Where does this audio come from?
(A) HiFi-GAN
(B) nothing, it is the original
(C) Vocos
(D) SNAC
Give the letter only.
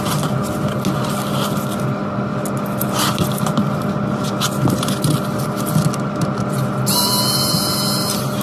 B